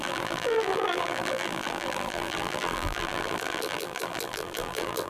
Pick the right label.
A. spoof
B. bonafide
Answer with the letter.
A